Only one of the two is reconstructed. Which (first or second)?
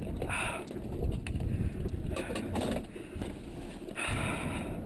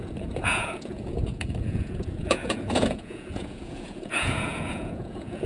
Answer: second